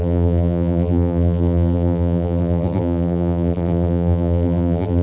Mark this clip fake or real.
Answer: fake